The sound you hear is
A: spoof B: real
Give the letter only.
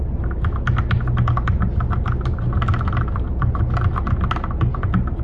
B